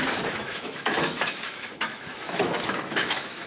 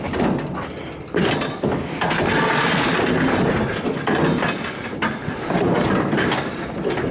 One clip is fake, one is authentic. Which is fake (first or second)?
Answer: first